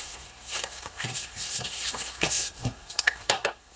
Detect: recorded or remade remade